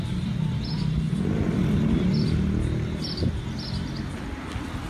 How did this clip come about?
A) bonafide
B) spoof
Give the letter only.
A